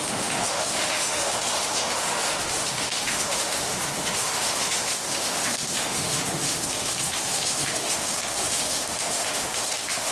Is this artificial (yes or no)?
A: yes